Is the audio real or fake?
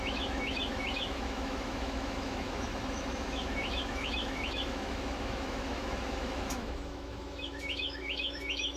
fake